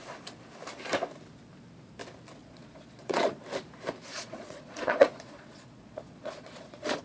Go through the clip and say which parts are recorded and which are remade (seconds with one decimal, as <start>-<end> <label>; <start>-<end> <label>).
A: 0.0-2.4 recorded; 2.4-3.4 remade; 3.4-4.1 recorded; 4.1-7.0 remade